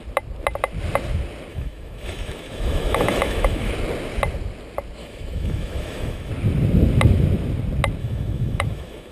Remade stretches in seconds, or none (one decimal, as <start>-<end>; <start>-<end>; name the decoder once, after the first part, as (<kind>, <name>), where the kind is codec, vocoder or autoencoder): 1.5-3.7 (autoencoder, DAC-VAE); 5.0-6.3; 8.0-9.1